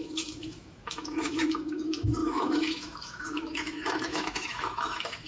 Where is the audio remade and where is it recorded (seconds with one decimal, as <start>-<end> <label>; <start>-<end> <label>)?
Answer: 0.0-5.3 remade